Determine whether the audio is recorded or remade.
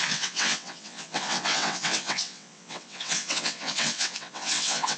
remade